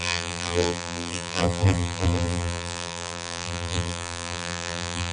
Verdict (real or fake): fake